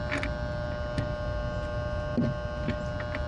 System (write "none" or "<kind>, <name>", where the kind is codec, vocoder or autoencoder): none